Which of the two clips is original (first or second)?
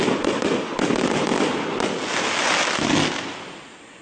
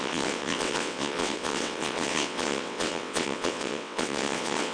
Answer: first